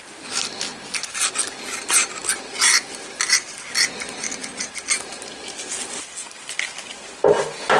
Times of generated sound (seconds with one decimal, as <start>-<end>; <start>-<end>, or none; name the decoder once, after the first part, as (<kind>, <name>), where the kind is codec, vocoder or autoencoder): none